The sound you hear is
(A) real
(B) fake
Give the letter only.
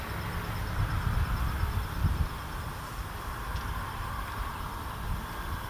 A